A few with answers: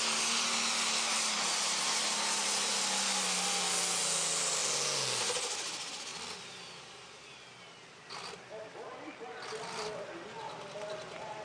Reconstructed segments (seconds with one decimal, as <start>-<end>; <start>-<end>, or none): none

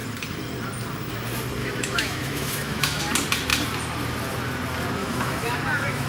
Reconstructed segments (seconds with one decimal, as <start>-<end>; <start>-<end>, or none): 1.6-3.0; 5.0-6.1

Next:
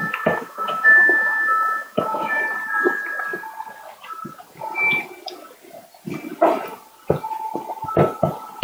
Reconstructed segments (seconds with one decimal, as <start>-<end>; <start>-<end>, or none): 0.0-2.4